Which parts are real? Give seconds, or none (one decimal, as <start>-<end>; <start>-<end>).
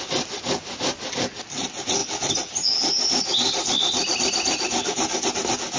0.0-5.8